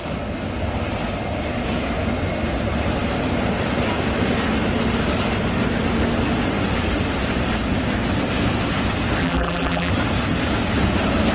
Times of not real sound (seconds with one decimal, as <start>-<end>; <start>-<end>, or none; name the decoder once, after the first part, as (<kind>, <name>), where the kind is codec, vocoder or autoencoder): 9.2-9.9 (vocoder, BigVGAN v2)